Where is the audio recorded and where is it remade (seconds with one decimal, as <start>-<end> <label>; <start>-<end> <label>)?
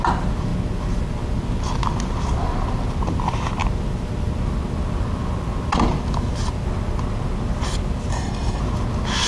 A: 0.0-8.1 recorded; 8.1-8.6 remade; 8.6-9.3 recorded